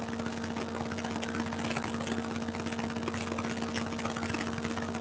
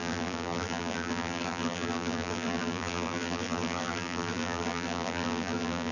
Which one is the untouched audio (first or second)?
first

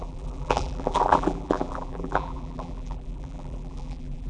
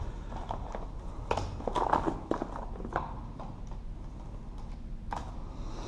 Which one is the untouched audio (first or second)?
second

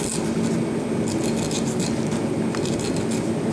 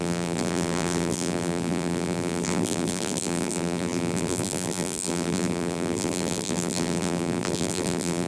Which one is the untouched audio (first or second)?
first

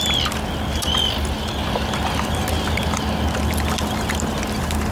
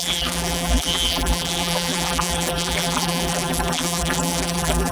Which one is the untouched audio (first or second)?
first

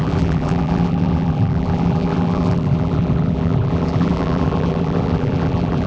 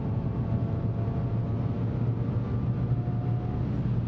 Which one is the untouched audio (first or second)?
second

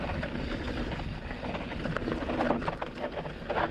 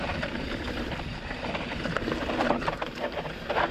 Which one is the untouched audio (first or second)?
first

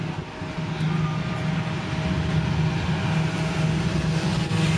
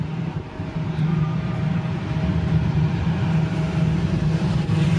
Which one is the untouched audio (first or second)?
first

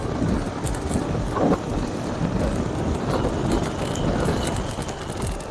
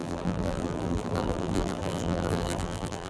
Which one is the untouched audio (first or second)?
first